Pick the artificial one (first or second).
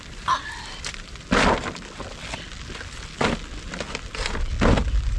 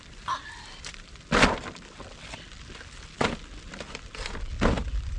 second